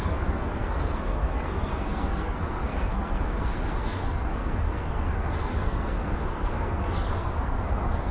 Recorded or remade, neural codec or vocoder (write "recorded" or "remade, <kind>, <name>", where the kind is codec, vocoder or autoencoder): remade, codec, SNAC